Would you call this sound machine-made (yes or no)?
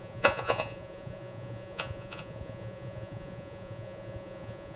yes